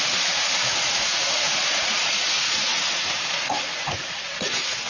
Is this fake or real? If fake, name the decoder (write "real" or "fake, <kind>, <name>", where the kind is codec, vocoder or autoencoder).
fake, vocoder, Vocos